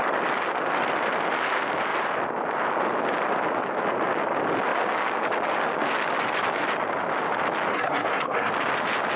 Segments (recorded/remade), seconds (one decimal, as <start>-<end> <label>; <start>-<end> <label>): 0.0-7.7 recorded; 7.7-8.5 remade; 8.5-9.2 recorded